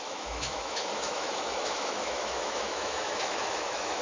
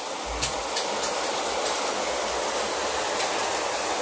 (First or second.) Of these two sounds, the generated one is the first